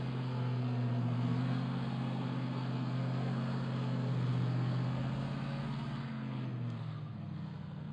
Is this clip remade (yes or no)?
yes